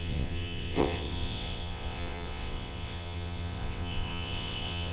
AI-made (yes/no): yes